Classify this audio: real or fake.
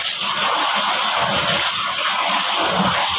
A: real